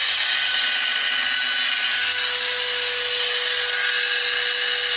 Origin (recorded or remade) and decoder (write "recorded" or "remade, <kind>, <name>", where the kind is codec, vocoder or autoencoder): recorded